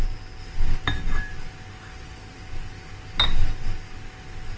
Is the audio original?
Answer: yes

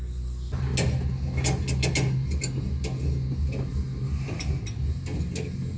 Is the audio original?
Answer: yes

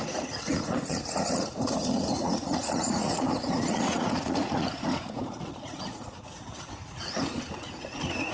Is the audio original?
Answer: no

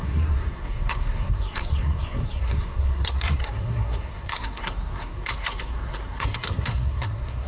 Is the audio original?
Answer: no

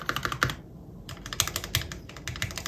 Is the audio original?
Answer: yes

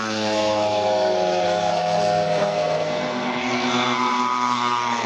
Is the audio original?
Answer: no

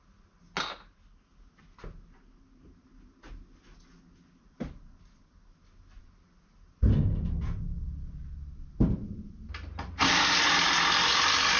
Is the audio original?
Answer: yes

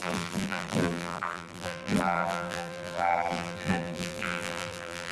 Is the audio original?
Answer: no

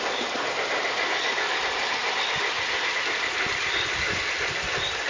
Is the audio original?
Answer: yes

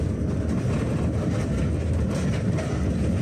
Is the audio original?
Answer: yes